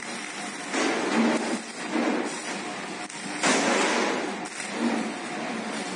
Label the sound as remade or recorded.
recorded